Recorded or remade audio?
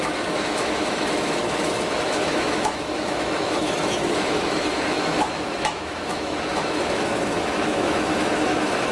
remade